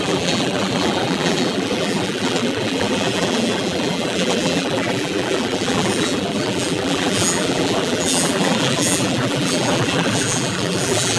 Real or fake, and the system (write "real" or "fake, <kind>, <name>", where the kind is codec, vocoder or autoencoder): fake, vocoder, BigVGAN v2